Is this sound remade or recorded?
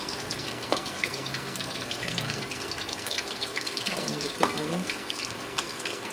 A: remade